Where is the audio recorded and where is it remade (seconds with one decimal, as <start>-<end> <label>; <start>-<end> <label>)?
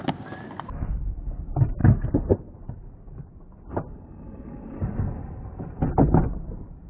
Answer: 0.0-6.9 recorded